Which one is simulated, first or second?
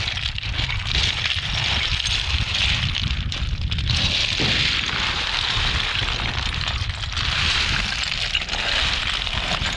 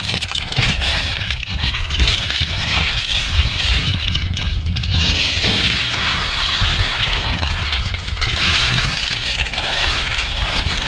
second